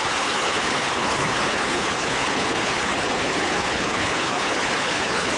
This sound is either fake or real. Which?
fake